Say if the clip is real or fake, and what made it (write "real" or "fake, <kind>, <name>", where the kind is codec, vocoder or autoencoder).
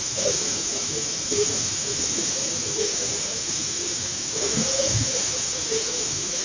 fake, autoencoder, DAC-VAE